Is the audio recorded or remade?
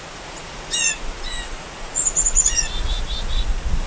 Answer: remade